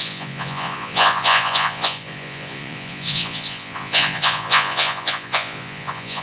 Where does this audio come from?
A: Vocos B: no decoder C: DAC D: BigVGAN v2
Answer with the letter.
A